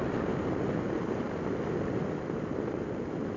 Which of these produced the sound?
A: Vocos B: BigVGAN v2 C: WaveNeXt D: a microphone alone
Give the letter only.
D